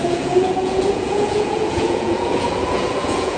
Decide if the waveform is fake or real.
fake